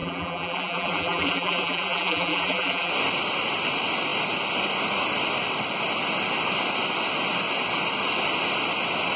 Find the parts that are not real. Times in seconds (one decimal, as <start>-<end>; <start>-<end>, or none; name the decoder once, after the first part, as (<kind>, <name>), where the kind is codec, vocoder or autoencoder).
0.0-2.9 (vocoder, BigVGAN v2)